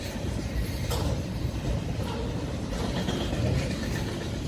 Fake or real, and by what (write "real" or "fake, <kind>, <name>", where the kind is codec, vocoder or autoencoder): fake, vocoder, BigVGAN v2